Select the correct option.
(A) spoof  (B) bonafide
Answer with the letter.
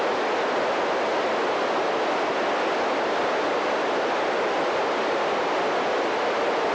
B